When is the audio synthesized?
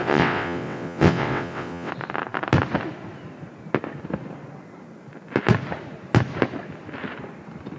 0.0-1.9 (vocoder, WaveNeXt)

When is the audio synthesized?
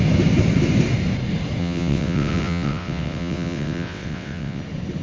1.6-4.6 (vocoder, WaveNeXt)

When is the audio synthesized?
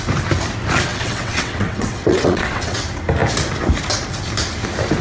0.9-2.8 (vocoder, WaveNeXt)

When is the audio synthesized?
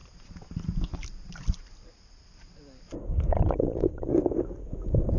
3.3-4.2 (vocoder, WaveNeXt)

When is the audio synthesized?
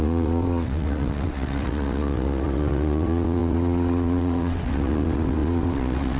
0.0-6.2 (vocoder, WaveNeXt)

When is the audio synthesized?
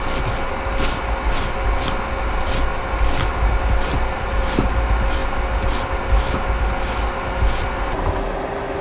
none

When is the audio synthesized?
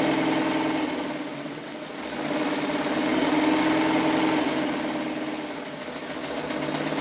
1.3-1.8 (vocoder, WaveNeXt)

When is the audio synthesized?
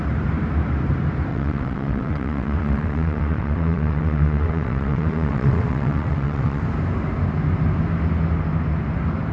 1.3-6.6 (vocoder, WaveNeXt)